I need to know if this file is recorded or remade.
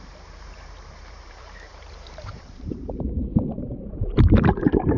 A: remade